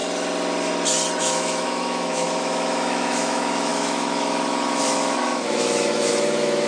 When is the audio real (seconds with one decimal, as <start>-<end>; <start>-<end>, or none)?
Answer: 0.0-1.2